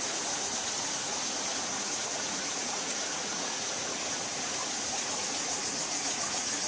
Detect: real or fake fake